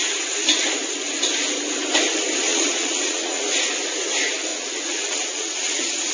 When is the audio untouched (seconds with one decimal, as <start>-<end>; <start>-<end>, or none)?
0.0-2.5; 3.4-4.5